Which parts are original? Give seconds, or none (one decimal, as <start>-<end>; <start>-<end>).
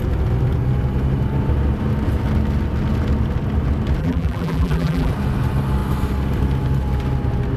0.0-4.0; 5.1-7.6